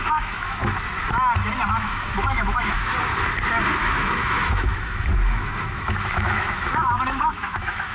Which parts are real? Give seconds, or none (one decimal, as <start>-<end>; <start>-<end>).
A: 0.6-1.7; 2.9-3.8